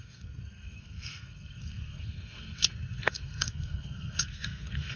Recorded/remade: remade